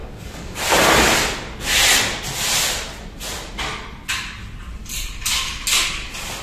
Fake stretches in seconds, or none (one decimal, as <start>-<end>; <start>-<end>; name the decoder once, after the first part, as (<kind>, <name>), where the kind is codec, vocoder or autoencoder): 0.0-0.6 (codec, DAC)